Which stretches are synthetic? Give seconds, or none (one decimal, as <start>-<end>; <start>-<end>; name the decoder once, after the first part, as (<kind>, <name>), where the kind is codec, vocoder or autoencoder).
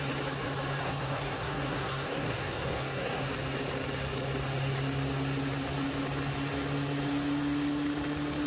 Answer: 0.8-3.3 (codec, SNAC)